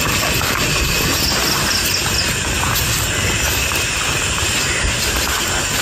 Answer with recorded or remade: recorded